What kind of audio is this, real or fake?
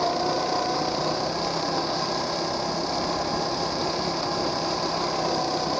real